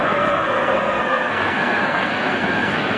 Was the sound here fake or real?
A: fake